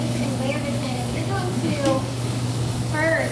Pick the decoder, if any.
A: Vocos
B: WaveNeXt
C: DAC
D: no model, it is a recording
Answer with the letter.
C